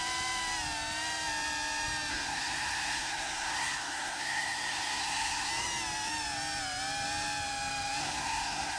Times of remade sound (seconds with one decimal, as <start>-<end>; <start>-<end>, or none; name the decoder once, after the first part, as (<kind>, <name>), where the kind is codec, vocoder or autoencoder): 2.1-5.5 (codec, SNAC); 8.0-8.8